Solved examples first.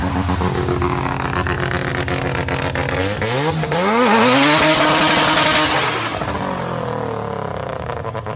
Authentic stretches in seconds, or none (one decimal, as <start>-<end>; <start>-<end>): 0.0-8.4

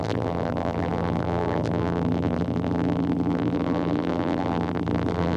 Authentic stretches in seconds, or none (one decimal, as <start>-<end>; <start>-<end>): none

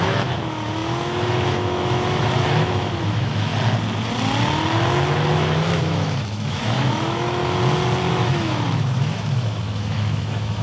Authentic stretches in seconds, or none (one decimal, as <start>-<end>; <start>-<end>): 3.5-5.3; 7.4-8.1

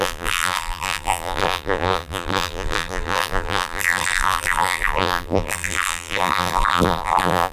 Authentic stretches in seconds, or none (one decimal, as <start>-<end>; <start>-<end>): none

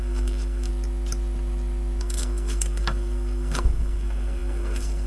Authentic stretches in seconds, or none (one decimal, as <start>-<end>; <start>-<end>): 0.7-2.0

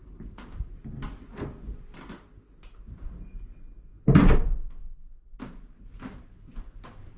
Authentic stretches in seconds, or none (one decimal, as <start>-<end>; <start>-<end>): 0.0-7.2